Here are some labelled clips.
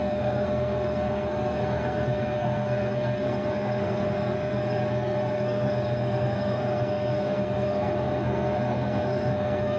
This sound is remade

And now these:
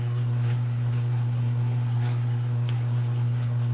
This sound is remade